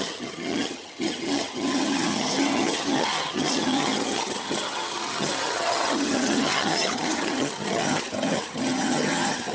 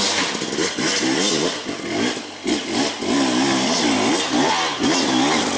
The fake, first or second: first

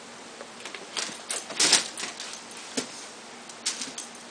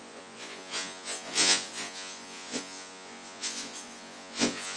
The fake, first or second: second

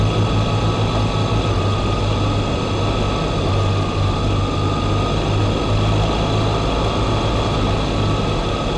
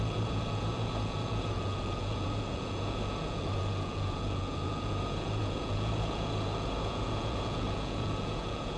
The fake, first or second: second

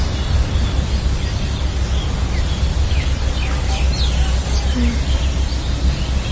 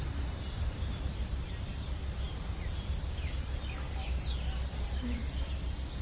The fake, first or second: second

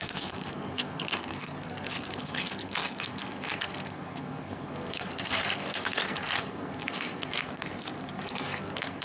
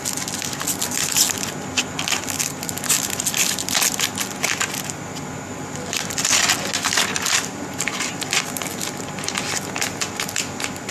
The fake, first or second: first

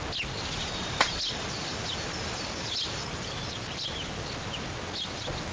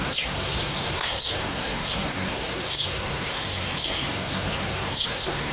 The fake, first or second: second